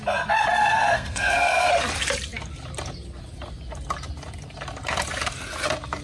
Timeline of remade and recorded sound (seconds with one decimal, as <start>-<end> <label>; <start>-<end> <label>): 0.0-0.5 recorded; 0.5-1.7 remade; 1.7-6.0 recorded